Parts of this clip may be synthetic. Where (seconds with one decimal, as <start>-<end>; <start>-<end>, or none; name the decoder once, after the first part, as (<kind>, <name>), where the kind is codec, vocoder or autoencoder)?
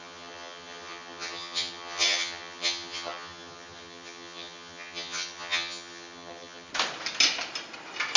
0.0-6.7 (vocoder, HiFi-GAN)